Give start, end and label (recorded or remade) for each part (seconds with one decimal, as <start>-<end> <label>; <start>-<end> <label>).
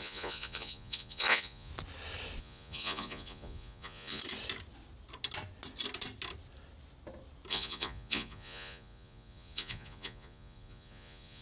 0.0-1.7 remade; 1.7-2.4 recorded; 2.4-4.2 remade; 4.2-7.5 recorded; 7.5-11.4 remade